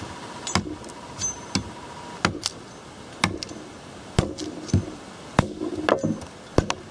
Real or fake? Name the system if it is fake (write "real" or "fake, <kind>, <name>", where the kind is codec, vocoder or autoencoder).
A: real